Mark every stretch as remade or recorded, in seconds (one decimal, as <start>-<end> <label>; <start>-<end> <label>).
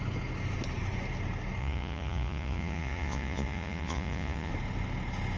0.0-1.6 recorded; 1.6-4.5 remade; 4.5-5.4 recorded